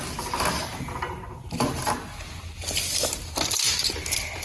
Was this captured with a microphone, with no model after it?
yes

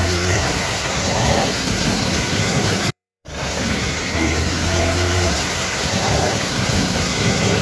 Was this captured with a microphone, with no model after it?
no